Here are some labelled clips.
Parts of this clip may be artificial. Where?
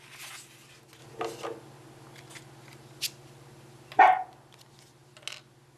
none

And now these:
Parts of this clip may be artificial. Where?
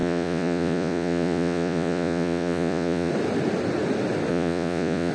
0.0-3.1 (vocoder, Vocos); 4.3-5.1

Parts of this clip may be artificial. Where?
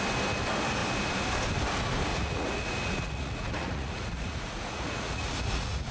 2.1-5.9 (vocoder, Vocos)